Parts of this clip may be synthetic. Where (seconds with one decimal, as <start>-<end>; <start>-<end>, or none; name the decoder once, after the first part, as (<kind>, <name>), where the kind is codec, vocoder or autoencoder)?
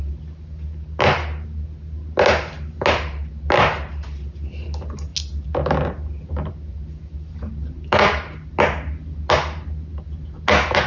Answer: none